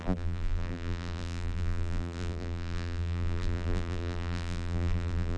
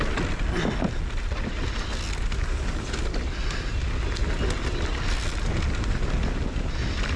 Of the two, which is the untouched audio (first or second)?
second